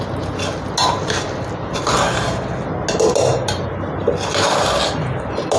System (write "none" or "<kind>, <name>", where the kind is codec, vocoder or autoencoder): none